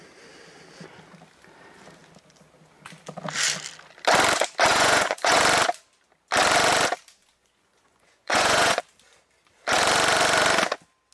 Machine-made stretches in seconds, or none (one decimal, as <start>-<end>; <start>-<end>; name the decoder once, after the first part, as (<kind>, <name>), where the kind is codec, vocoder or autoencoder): 4.7-5.4 (vocoder, Vocos); 7.2-8.8